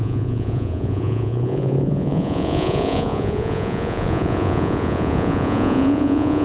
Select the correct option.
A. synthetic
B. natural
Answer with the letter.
A